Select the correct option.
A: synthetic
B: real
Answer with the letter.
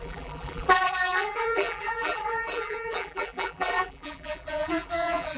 A